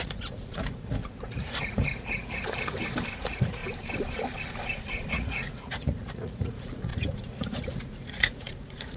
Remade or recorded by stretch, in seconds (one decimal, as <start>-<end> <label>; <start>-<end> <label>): 0.0-2.4 remade; 2.4-3.2 recorded; 3.2-3.6 remade; 3.6-5.1 recorded; 5.1-9.0 remade